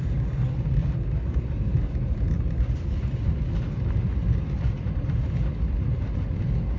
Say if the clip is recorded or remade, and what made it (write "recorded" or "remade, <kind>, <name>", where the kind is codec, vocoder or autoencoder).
recorded